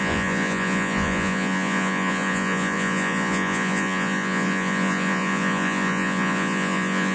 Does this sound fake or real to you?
fake